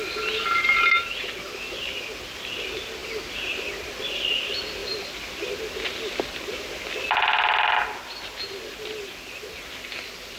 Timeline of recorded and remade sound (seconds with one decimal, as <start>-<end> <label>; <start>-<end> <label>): 0.0-10.4 recorded